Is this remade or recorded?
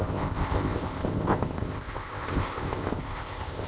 remade